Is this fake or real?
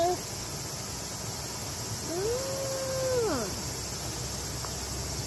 real